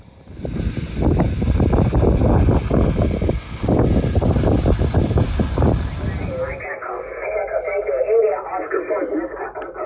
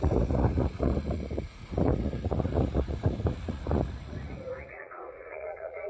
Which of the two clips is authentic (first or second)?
first